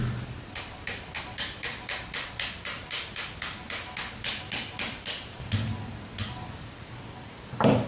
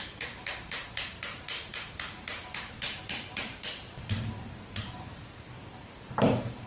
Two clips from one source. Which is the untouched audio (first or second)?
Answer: first